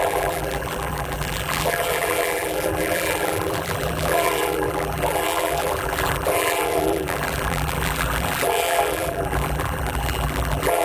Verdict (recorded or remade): remade